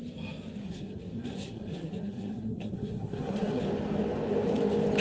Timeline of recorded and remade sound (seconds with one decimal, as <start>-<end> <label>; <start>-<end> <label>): 0.0-0.6 recorded; 0.6-3.6 remade; 3.6-5.0 recorded